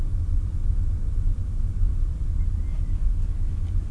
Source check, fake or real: real